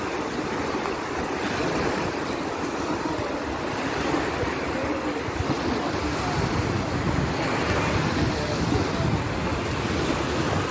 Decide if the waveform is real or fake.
real